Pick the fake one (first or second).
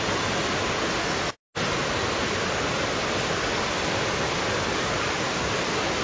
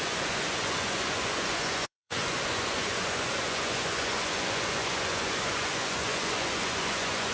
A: second